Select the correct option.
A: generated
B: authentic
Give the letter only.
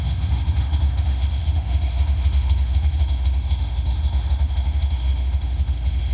A